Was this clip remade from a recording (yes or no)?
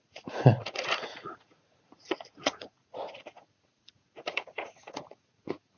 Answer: yes